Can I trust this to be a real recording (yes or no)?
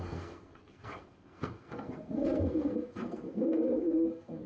no